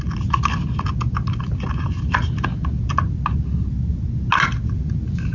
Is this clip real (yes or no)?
yes